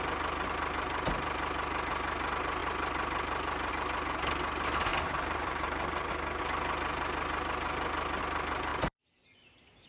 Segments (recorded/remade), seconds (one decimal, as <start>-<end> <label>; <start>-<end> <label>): 0.0-4.9 recorded; 4.9-6.1 remade; 6.1-8.7 recorded; 8.7-9.9 remade